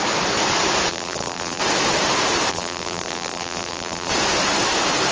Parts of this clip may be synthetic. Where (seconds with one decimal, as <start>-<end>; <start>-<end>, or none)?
0.9-1.6; 2.5-4.1